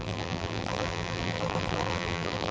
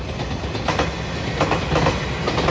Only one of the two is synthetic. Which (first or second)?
first